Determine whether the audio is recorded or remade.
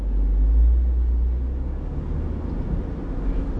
recorded